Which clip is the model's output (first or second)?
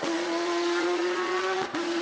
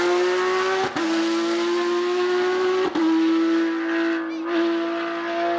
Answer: first